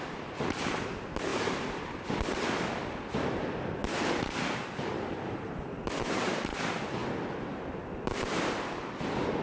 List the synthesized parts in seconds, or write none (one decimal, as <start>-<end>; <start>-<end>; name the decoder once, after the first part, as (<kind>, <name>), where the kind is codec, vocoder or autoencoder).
0.0-3.8 (vocoder, BigVGAN v2); 4.9-7.0; 8.4-9.4